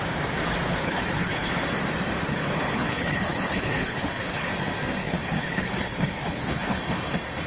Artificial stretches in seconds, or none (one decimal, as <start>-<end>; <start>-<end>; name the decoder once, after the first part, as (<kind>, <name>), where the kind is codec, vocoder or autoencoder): 0.8-1.5 (codec, HILCodec); 2.3-4.5; 5.0-6.8